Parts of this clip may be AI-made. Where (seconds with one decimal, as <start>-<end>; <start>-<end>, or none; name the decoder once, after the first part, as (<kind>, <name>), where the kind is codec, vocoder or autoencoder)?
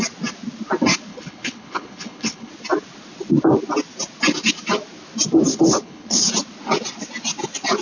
1.1-2.5 (codec, HILCodec); 5.5-6.3